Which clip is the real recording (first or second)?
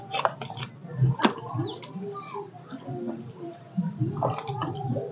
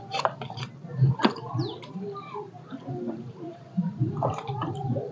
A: first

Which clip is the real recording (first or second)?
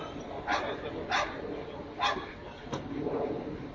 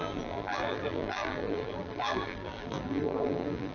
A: first